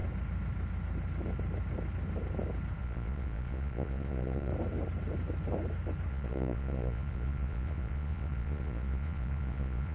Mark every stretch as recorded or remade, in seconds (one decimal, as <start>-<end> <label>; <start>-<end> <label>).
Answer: 0.0-2.8 recorded; 2.8-4.5 remade; 4.5-6.1 recorded; 6.1-9.9 remade